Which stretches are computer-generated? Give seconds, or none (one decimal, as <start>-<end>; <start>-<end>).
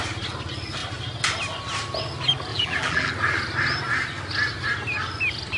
2.5-3.1